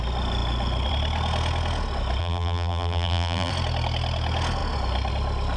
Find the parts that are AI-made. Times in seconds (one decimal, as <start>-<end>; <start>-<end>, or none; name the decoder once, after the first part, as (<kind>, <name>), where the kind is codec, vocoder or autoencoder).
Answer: 2.2-3.5 (vocoder, BigVGAN v2)